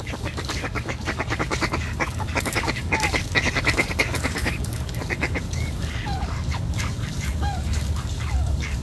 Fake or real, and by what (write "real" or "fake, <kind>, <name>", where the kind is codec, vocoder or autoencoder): fake, codec, DAC